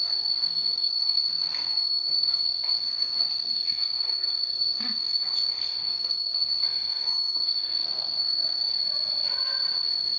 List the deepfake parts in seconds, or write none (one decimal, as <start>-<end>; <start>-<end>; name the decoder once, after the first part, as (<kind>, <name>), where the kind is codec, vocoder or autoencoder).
0.0-8.6 (codec, SNAC)